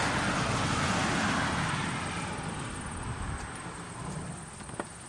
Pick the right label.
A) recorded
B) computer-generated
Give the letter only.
A